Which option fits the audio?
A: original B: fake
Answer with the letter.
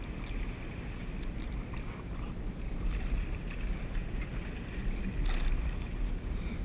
A